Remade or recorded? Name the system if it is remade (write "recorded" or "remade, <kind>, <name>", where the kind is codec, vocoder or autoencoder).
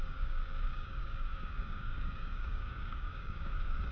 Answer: remade, codec, DAC